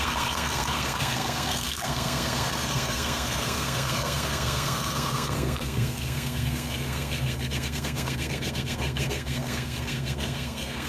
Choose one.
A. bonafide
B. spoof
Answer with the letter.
B